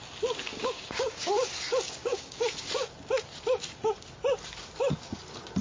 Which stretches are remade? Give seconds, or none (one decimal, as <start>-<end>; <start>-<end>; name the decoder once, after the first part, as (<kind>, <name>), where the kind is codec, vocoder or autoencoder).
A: 0.5-1.3 (codec, DAC); 2.0-2.7